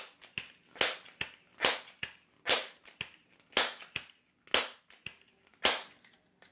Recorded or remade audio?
recorded